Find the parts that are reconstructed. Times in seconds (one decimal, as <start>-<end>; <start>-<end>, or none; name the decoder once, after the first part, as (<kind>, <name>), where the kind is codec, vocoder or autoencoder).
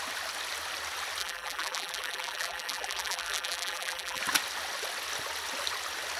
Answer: 1.2-4.2 (vocoder, BigVGAN v2)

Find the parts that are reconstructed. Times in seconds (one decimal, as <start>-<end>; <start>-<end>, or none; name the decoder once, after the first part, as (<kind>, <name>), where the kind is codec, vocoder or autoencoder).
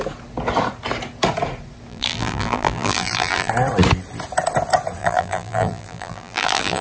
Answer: 1.9-3.5 (vocoder, BigVGAN v2); 5.0-6.8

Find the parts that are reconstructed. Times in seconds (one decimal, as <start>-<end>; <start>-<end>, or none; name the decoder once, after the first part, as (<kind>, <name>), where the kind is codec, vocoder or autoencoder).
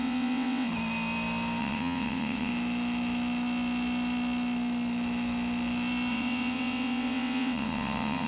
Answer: 0.0-0.7 (vocoder, WaveNeXt); 1.6-2.5; 6.1-8.3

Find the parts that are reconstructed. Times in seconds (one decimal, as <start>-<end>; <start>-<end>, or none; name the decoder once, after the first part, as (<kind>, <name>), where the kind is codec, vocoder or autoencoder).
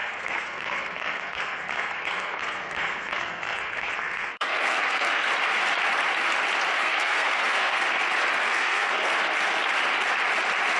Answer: 0.0-5.3 (codec, SNAC); 6.8-7.8; 8.4-9.2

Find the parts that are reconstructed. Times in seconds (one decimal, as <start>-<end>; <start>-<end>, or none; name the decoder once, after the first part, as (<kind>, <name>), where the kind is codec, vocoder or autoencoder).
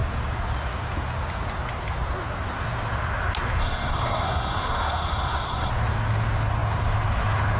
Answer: 3.6-5.7 (codec, SNAC)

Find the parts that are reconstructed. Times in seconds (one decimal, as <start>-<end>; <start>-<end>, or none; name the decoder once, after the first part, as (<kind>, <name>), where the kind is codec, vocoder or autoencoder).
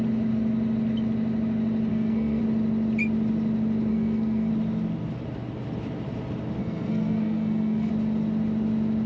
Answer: 1.9-2.4 (codec, SNAC); 3.9-4.5; 6.6-7.9